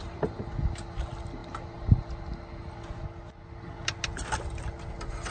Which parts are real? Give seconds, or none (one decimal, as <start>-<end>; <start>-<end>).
0.0-5.3